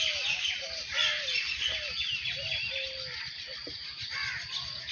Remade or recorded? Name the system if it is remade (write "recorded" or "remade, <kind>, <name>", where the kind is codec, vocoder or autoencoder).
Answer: recorded